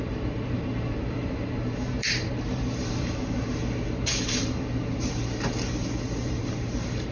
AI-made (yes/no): yes